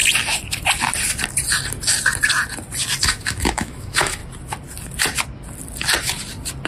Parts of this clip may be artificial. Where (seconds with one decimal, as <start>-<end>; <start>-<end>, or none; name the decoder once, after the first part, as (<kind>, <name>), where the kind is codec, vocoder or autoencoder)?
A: 3.0-4.2 (autoencoder, DAC-VAE)